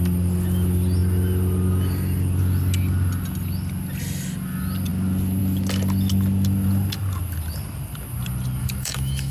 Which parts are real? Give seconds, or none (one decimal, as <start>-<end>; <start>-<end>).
0.0-8.6